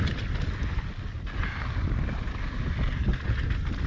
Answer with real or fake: real